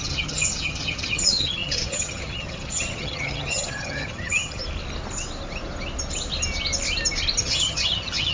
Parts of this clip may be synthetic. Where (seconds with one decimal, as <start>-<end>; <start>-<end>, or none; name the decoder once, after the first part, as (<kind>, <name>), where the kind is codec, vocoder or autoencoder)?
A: 0.0-4.6 (vocoder, HiFi-GAN); 7.4-8.3